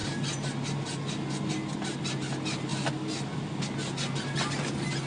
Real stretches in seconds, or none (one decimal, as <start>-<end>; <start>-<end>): 0.0-5.1